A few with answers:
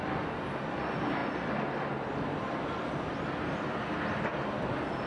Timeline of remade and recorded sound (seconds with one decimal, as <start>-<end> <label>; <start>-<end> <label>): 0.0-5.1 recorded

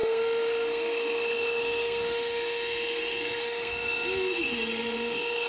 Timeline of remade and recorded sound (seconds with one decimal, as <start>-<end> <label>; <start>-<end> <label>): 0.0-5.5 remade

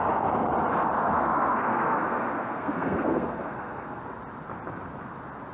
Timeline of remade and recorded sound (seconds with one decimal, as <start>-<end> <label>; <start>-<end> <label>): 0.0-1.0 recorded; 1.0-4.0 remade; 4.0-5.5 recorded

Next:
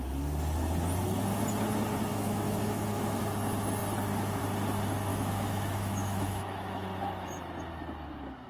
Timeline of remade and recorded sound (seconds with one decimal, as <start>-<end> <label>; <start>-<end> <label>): 0.0-2.1 recorded; 2.1-3.2 remade; 3.2-5.1 recorded; 5.1-7.4 remade; 7.4-8.5 recorded